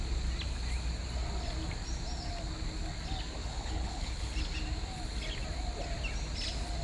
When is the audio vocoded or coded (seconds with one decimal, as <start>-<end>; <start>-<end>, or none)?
3.4-4.3